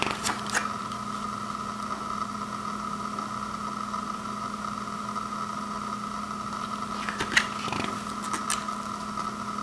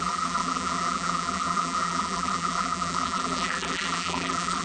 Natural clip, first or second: first